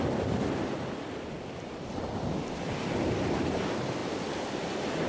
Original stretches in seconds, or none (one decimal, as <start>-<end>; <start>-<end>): 0.0-5.1